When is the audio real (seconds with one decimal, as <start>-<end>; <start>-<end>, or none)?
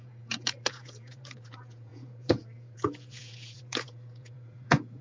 none